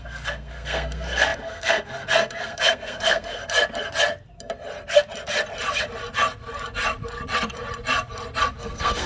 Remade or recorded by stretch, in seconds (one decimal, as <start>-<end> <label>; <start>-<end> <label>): 0.0-3.4 remade; 3.4-8.6 recorded; 8.6-9.1 remade